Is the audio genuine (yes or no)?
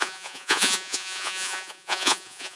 no